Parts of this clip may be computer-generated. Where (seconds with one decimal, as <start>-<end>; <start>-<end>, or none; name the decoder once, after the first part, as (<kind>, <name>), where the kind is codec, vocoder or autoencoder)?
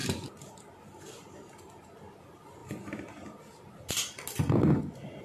none